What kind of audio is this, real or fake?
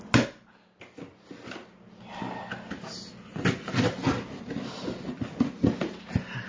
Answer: real